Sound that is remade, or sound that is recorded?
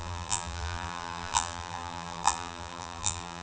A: remade